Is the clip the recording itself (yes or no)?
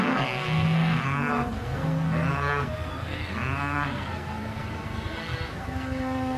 no